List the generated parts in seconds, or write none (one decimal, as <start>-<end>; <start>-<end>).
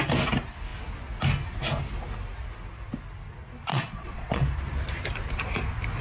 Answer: 3.7-4.4